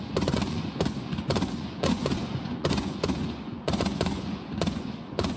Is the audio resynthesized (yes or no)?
yes